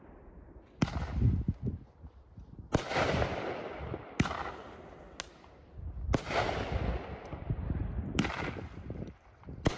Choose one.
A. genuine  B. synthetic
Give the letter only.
A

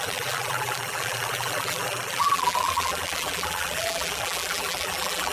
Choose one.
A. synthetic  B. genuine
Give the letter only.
A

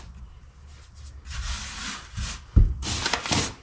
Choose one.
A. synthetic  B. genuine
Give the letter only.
B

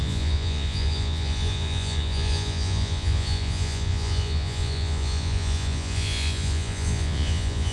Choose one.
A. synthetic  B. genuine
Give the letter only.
A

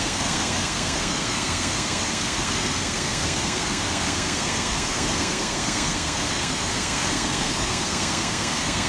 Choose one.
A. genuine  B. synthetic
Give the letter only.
B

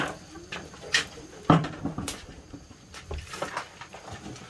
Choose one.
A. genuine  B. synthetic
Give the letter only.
B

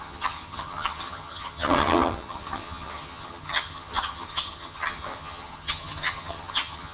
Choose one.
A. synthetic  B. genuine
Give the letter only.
A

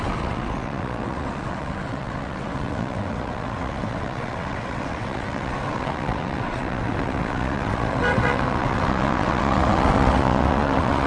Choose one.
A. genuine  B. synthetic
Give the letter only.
B